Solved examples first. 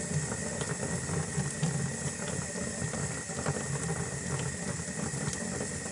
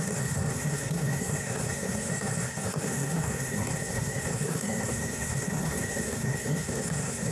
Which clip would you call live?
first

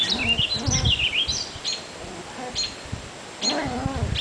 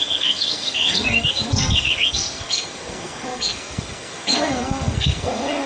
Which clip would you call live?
first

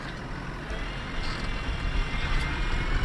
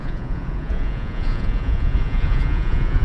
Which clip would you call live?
first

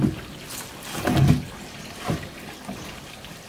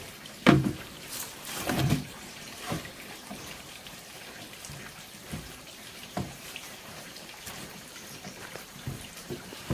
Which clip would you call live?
first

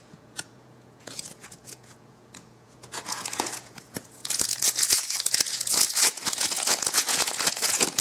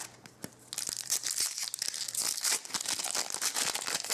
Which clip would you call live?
second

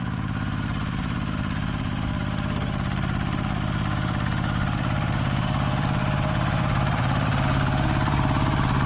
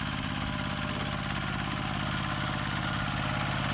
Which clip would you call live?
second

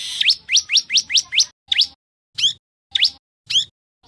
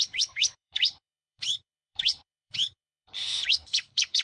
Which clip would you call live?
first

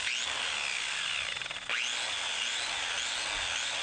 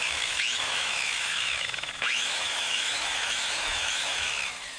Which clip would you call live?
first